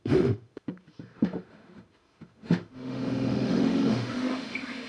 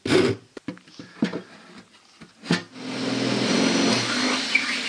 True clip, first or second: second